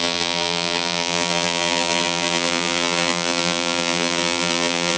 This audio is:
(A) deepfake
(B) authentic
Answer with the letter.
A